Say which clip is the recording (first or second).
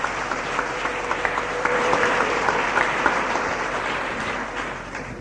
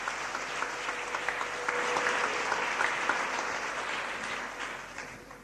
second